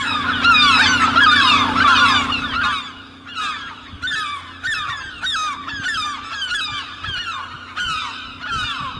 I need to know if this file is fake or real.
fake